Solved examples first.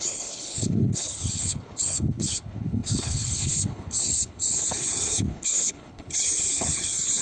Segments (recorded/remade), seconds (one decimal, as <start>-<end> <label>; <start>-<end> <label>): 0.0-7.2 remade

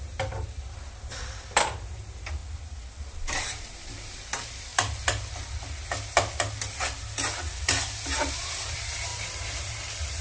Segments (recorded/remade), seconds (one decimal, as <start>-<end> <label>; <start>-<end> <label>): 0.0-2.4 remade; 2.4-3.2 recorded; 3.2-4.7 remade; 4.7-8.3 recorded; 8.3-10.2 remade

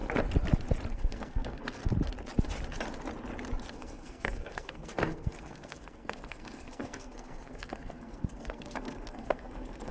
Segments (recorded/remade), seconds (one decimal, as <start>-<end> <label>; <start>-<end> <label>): 0.0-0.9 recorded; 0.9-1.8 remade; 1.8-3.7 recorded; 3.7-9.9 remade

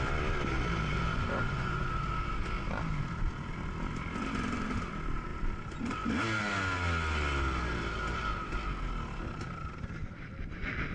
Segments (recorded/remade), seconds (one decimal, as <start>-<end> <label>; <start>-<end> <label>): 0.0-1.1 recorded; 1.1-1.9 remade; 1.9-10.9 recorded